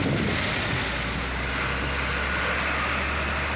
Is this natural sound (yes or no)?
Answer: yes